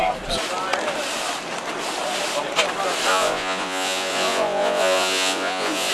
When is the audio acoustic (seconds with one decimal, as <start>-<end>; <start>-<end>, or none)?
0.0-3.1